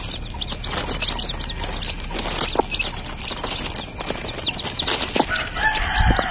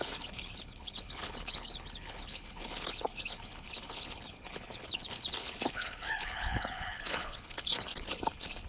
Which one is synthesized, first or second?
second